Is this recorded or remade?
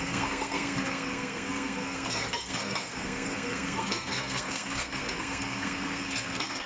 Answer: remade